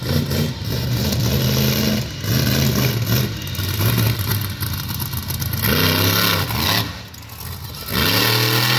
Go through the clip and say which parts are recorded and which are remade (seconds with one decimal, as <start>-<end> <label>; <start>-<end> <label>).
0.0-1.2 remade; 1.2-3.6 recorded; 3.6-4.3 remade; 4.3-8.8 recorded